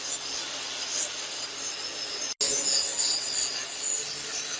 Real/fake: real